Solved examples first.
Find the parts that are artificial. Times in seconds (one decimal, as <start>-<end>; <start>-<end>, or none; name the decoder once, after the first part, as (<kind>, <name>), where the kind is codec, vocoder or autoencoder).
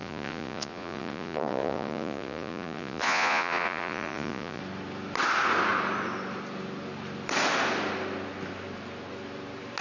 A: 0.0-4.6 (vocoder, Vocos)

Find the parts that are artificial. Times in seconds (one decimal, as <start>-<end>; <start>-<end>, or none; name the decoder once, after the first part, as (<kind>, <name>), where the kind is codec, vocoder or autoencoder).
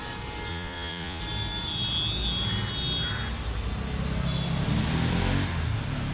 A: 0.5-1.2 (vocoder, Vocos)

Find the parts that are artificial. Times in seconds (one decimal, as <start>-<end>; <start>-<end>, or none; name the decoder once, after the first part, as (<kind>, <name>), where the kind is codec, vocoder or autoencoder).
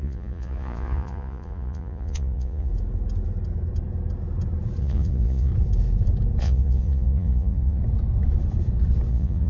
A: 0.0-2.7 (vocoder, Vocos); 4.8-5.5; 6.4-7.8; 9.1-9.5